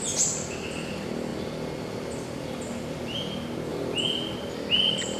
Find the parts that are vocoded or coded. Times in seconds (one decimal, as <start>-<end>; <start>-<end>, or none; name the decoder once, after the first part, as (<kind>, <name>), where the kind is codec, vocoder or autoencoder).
none

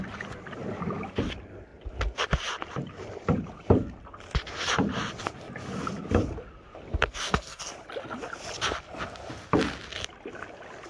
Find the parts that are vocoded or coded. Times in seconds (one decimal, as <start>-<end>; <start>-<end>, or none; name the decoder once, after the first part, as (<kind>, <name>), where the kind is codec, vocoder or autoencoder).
6.9-7.7 (codec, SNAC)

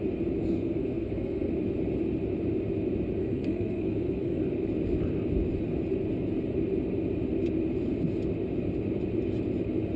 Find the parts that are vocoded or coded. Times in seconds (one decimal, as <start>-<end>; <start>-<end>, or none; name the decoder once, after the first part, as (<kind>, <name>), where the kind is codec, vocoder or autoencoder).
0.4-1.5 (codec, SNAC); 3.2-4.4

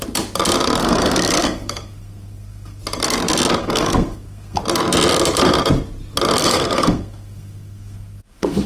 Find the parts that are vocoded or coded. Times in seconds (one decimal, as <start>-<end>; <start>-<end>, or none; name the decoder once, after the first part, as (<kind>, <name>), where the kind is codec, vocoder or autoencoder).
0.8-2.8 (codec, SNAC); 3.6-4.6; 6.4-8.7

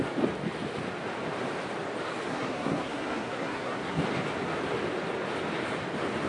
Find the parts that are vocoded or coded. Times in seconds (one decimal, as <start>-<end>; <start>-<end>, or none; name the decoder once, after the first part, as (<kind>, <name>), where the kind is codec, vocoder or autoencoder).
2.3-4.0 (codec, SNAC)

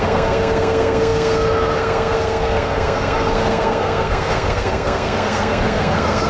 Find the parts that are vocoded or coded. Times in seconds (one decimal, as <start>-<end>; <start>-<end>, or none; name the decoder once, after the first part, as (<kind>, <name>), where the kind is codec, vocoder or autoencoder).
0.0-6.3 (codec, SNAC)

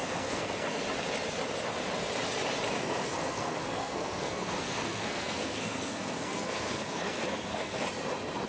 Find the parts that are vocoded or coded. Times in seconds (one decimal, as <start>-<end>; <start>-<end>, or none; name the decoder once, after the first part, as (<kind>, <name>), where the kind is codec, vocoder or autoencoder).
0.0-0.8 (codec, SNAC); 2.8-7.9